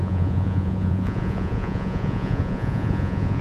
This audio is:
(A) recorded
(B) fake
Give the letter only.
B